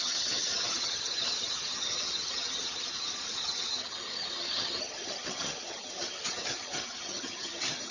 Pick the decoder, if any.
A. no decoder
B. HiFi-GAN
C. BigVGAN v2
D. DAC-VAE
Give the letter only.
B